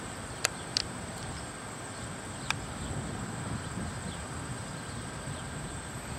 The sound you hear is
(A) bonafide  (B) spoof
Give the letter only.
A